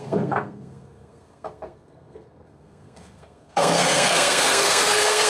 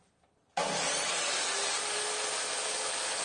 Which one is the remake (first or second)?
first